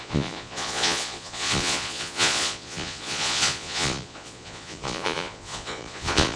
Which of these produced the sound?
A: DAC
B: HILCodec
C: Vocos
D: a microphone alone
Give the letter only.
C